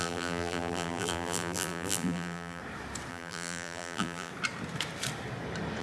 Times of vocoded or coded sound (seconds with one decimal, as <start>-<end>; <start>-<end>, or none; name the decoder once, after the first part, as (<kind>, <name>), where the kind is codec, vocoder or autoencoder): 0.0-2.6 (vocoder, BigVGAN v2); 3.1-4.3